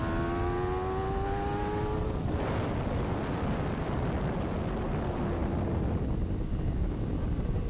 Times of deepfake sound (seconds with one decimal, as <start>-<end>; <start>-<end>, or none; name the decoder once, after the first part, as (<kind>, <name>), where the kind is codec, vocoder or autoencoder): none